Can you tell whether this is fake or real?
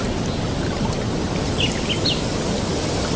real